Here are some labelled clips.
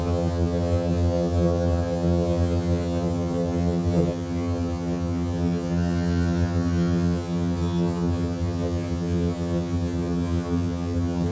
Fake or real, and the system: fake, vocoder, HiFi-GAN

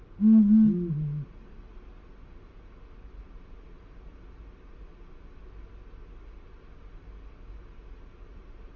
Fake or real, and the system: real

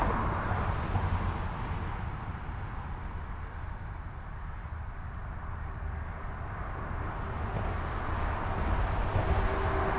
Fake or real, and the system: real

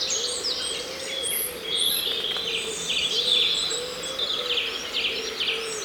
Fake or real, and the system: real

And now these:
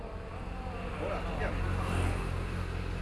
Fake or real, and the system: real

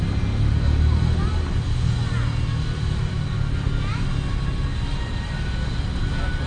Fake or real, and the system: real